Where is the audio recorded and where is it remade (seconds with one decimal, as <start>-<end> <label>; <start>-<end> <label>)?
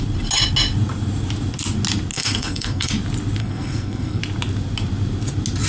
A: 0.0-2.1 recorded; 2.1-2.9 remade; 2.9-3.4 recorded; 3.4-4.2 remade; 4.2-5.7 recorded